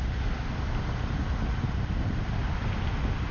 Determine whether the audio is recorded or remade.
recorded